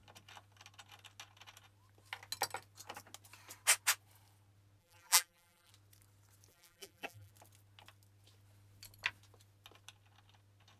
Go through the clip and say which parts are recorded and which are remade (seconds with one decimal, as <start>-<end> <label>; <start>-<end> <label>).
0.0-4.8 recorded; 4.8-5.7 remade; 5.7-6.5 recorded; 6.5-7.3 remade; 7.3-10.8 recorded